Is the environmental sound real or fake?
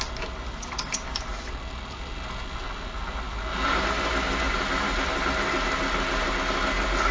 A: real